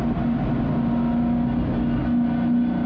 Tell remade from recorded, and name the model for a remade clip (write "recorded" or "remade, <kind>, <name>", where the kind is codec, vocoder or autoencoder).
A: recorded